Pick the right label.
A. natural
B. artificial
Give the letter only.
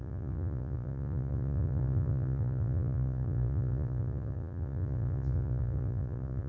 B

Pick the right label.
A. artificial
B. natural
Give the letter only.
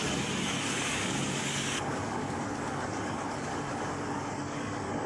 A